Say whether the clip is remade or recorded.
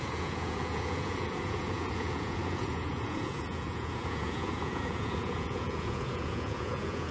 remade